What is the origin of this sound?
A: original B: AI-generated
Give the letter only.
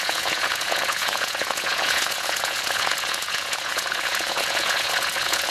B